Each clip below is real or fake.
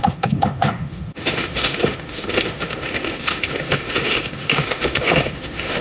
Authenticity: fake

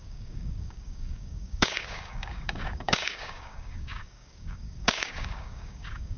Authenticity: fake